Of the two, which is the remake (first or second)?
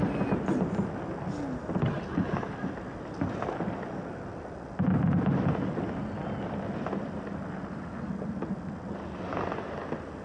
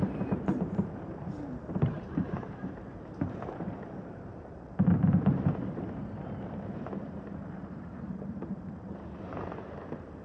second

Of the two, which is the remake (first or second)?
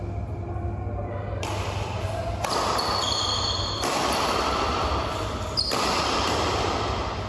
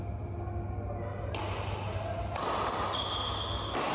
first